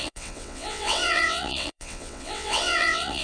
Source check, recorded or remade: remade